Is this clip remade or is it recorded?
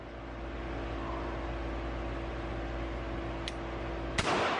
recorded